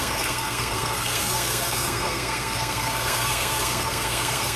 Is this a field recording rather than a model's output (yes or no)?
no